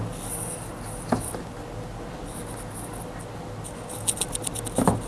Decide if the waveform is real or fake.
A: real